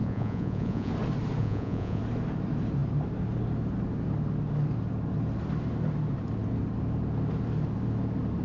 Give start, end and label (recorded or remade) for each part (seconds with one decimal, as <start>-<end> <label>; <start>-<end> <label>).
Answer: 0.0-0.9 remade; 0.9-1.4 recorded; 1.4-2.0 remade; 2.0-8.4 recorded